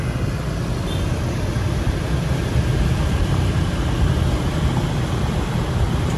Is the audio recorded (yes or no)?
yes